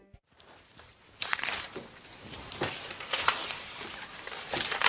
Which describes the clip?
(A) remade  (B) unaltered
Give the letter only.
A